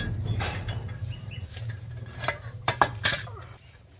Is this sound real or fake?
fake